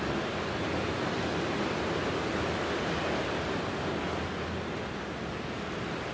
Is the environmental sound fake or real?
real